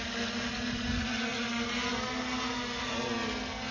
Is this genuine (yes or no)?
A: yes